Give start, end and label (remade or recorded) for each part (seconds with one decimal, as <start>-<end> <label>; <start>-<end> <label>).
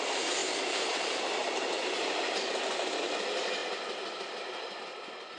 0.0-0.4 recorded; 0.4-1.8 remade; 1.8-5.4 recorded